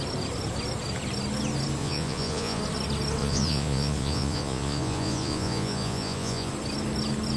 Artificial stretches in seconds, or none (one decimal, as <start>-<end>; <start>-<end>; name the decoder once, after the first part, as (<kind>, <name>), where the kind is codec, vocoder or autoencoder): 1.8-2.6 (vocoder, Vocos); 3.2-6.5